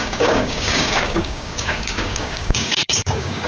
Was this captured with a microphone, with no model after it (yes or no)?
no